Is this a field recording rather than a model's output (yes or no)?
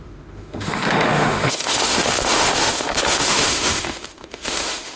no